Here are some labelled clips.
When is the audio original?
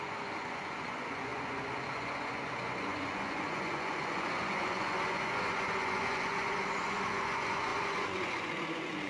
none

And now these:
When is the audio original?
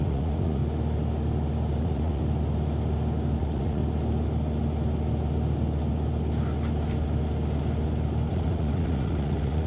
0.6-1.8; 2.2-3.4; 3.8-8.3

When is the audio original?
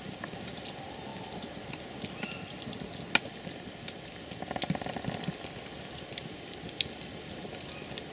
0.0-8.1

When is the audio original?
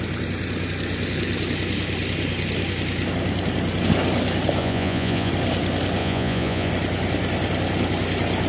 0.0-4.6; 5.3-6.0; 6.7-8.5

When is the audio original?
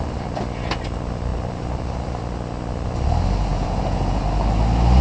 0.0-3.5; 4.2-5.0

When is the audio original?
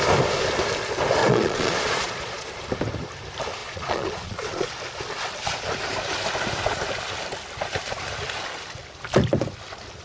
0.0-1.2; 2.6-3.6; 4.7-10.0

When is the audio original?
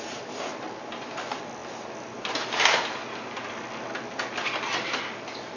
0.0-5.6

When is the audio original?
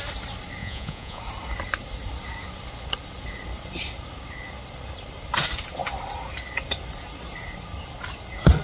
0.0-0.6; 1.2-8.6